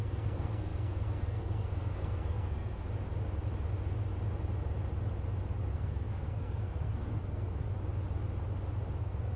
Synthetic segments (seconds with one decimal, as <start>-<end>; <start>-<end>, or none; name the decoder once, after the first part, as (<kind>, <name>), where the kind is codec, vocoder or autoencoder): 0.0-2.8 (codec, SNAC); 5.7-7.7; 9.0-9.4